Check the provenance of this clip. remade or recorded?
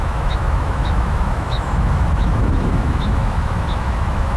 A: remade